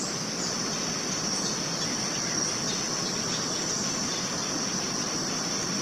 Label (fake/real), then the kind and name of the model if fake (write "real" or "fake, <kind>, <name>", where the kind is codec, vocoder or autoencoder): real